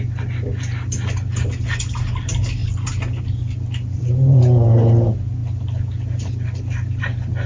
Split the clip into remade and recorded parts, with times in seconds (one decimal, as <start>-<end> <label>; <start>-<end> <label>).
0.0-7.5 recorded